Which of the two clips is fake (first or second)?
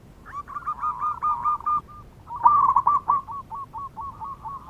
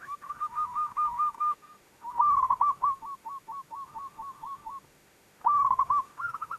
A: second